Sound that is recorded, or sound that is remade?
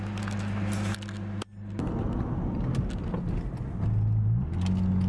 recorded